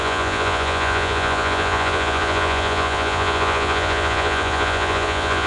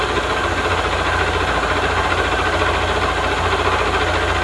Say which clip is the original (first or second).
second